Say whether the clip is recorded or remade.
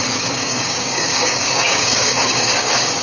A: remade